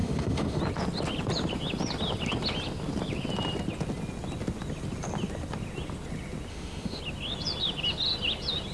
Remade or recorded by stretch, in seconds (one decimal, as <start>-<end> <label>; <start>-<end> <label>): 0.0-0.6 remade; 0.6-6.5 recorded; 6.5-7.0 remade; 7.0-8.7 recorded